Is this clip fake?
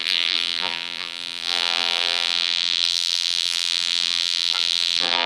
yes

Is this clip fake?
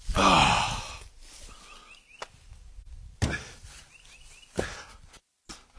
no